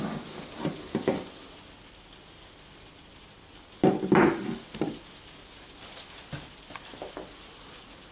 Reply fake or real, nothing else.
real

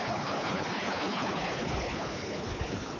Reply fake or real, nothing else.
fake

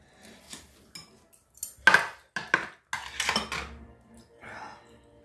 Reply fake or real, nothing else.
real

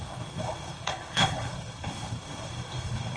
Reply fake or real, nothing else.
fake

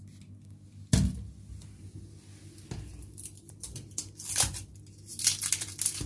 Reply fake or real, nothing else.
real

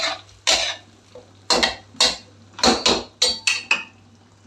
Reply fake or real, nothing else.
real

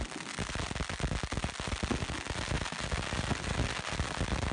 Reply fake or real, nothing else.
real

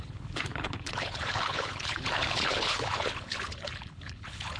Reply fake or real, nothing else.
fake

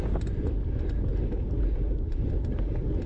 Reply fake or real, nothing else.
real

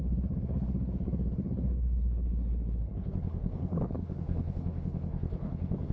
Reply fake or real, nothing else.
fake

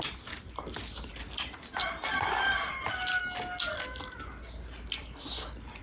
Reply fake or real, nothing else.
real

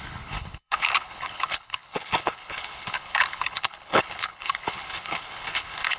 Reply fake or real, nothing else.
fake